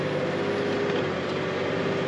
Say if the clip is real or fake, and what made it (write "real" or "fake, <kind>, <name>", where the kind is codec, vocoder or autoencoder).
real